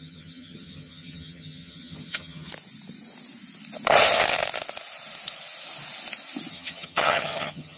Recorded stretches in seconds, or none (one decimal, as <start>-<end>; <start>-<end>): 2.5-6.5